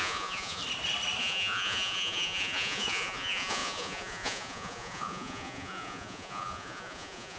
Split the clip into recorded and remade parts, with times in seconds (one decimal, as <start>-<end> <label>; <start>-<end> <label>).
0.0-0.6 remade; 0.6-1.2 recorded; 1.2-7.4 remade